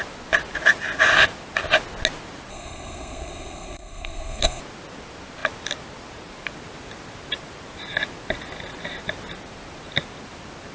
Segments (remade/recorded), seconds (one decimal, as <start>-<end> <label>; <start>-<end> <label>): 0.0-2.5 recorded; 2.5-4.6 remade; 4.6-10.7 recorded